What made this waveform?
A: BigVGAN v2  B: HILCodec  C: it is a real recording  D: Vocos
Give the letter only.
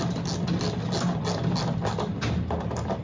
C